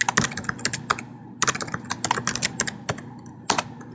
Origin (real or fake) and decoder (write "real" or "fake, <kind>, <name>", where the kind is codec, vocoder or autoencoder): real